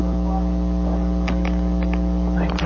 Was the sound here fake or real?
real